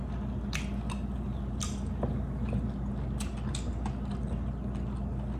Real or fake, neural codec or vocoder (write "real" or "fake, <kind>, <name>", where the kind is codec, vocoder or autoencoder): real